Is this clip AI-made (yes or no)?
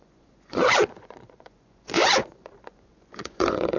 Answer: yes